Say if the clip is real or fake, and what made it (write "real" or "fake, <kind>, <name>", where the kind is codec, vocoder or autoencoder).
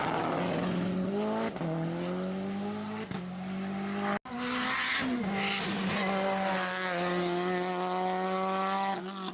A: real